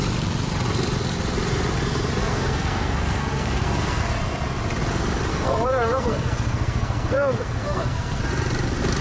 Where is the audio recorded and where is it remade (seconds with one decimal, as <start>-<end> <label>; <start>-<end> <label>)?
0.0-2.2 recorded; 2.2-4.0 remade; 4.0-5.3 recorded; 5.3-8.2 remade; 8.2-9.0 recorded